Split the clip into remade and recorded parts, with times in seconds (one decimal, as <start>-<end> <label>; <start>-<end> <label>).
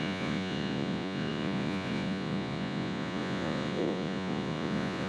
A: 0.0-5.1 remade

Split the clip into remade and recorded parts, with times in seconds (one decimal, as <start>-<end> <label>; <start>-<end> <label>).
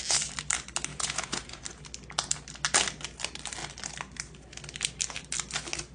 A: 0.0-0.9 recorded; 0.9-1.6 remade; 1.6-5.9 recorded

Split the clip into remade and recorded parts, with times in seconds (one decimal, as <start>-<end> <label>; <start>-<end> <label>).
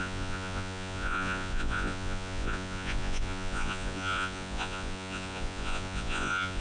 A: 0.0-6.6 remade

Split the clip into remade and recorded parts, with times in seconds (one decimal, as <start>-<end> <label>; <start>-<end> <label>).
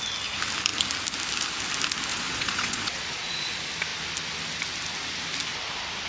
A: 0.0-2.1 recorded; 2.1-3.5 remade; 3.5-6.1 recorded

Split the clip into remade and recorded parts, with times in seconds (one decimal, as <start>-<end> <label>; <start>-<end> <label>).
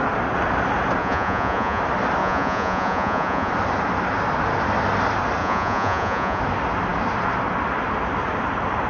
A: 0.0-1.0 recorded; 1.0-1.8 remade; 1.8-2.2 recorded; 2.2-3.5 remade; 3.5-5.4 recorded; 5.4-6.4 remade; 6.4-8.9 recorded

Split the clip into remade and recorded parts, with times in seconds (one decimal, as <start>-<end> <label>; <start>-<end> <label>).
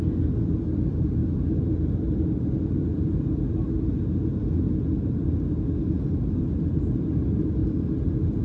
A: 0.0-8.4 recorded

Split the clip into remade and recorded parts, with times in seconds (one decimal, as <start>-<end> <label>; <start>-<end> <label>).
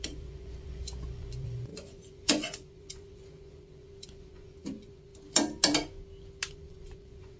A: 0.0-5.1 remade; 5.1-6.5 recorded; 6.5-7.4 remade